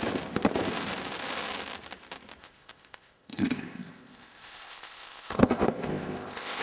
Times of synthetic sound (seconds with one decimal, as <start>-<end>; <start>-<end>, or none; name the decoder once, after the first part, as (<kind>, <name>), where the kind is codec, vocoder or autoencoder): 2.4-6.6 (codec, ZipCodec)